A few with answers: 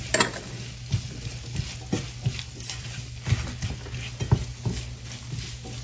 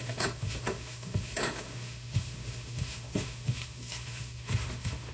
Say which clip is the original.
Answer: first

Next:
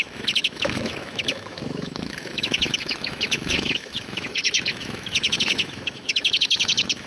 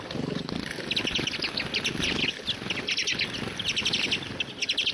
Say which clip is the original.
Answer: second